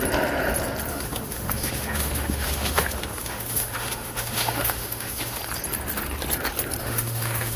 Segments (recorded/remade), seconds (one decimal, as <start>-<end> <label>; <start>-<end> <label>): 0.0-0.9 recorded; 0.9-5.4 remade; 5.4-6.8 recorded; 6.8-7.6 remade